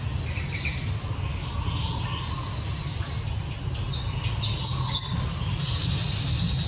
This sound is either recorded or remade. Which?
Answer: recorded